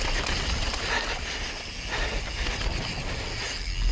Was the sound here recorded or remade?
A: recorded